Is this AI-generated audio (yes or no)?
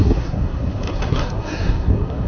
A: yes